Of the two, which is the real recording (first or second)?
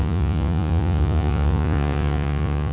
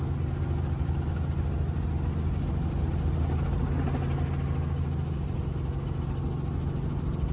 second